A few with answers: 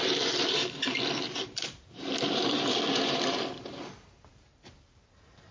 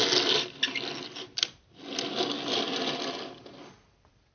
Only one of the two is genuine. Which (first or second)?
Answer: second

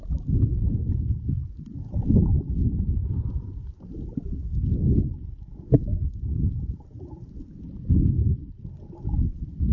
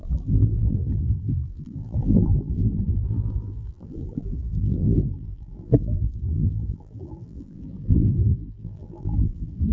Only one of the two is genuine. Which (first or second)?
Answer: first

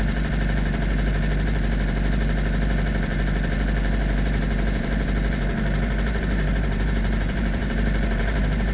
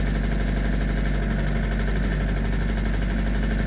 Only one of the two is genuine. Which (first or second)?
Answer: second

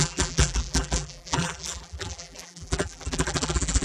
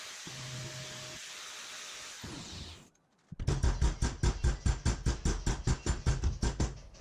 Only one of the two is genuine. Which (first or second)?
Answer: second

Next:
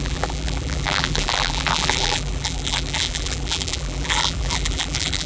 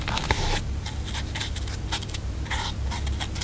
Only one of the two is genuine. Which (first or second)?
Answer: second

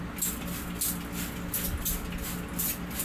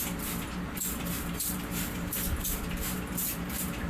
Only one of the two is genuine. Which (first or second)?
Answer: first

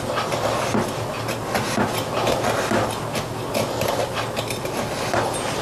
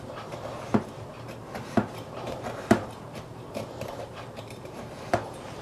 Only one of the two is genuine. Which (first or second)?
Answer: first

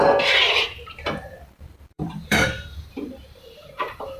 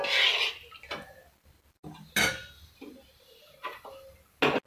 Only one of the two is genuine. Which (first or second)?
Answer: second